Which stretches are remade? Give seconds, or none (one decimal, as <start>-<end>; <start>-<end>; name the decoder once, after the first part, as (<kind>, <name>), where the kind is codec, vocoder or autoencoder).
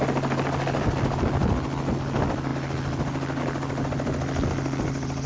none